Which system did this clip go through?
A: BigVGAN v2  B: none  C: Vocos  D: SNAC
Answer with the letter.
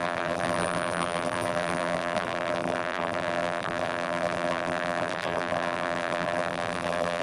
A